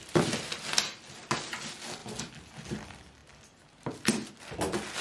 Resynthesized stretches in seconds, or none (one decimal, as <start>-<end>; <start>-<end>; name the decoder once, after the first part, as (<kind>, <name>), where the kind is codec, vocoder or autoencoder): none